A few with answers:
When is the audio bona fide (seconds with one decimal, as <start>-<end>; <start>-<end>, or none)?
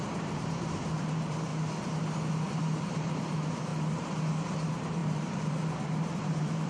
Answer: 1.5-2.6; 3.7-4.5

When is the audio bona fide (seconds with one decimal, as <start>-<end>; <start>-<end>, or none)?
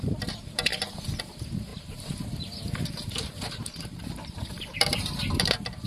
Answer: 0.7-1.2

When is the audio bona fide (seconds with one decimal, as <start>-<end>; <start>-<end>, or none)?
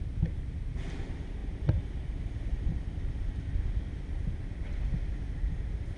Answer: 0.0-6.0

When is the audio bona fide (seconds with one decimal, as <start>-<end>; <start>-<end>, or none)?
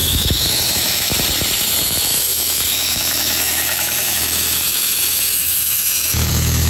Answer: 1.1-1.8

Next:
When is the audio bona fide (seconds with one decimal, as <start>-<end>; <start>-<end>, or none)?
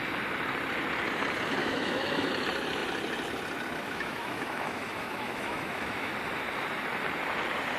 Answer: 0.0-1.6; 2.3-3.8; 6.1-7.8